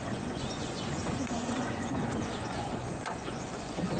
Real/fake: fake